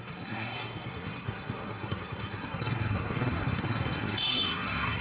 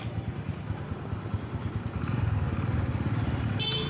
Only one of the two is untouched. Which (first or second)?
second